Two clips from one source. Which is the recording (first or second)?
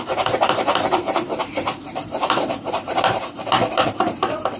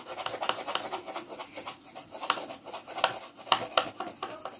second